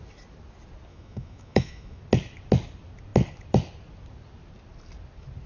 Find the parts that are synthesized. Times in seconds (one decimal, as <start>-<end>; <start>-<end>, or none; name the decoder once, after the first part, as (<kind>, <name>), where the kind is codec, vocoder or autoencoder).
0.9-2.0 (autoencoder, DAC-VAE)